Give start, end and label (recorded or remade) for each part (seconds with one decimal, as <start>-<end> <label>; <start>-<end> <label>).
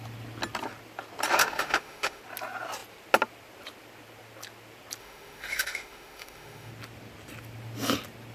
0.0-1.4 recorded; 1.4-2.2 remade; 2.2-5.0 recorded; 5.0-6.7 remade; 6.7-8.3 recorded